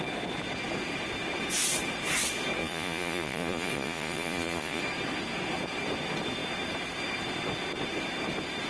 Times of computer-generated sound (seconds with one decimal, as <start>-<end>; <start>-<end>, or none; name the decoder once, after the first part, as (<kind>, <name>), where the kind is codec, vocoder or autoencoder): 2.6-4.8 (vocoder, Vocos)